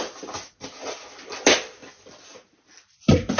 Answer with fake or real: real